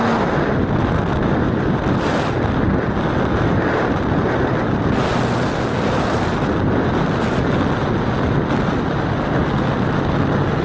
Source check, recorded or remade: recorded